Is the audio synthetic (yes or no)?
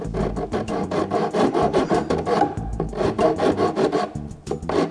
no